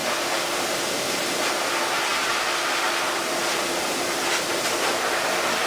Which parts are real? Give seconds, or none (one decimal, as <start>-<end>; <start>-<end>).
0.0-5.7